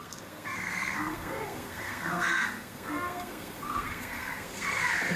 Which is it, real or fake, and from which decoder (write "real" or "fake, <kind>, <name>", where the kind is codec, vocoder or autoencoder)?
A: fake, codec, SNAC